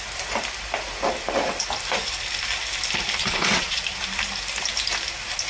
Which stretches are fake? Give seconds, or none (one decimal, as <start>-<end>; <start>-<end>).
3.2-3.8

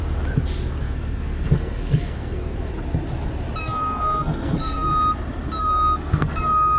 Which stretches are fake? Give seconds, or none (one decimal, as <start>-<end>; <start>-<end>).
0.8-2.7; 3.6-4.9; 5.6-6.8